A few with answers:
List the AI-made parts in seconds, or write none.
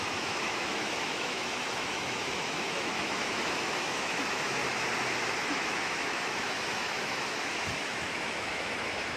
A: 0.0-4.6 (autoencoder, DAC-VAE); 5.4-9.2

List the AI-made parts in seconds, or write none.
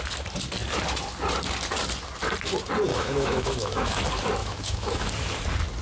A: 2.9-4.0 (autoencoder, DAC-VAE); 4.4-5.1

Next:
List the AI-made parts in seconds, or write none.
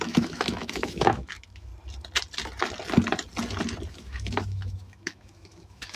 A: 0.0-1.7 (autoencoder, DAC-VAE); 3.9-6.0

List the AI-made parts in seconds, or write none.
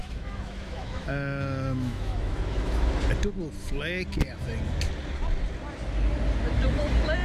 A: 0.0-3.0 (autoencoder, DAC-VAE)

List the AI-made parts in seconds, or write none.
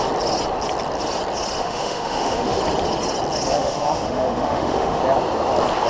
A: 1.6-2.6 (autoencoder, DAC-VAE); 3.5-5.0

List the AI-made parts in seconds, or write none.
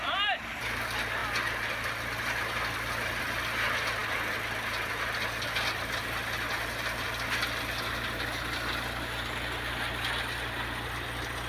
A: none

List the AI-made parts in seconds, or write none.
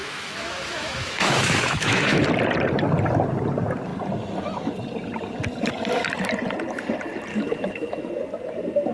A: 0.0-2.3 (autoencoder, DAC-VAE); 7.3-8.1